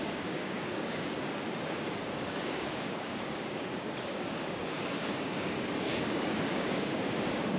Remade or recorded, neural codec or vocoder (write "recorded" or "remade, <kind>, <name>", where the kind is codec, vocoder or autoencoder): remade, codec, DAC